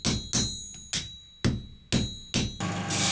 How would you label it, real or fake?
real